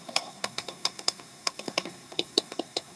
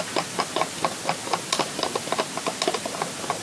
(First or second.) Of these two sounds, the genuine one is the second